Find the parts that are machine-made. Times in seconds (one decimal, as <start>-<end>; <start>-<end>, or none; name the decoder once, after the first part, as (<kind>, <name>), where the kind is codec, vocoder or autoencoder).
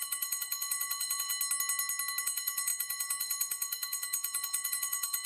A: 0.0-1.3 (vocoder, Vocos); 2.2-5.3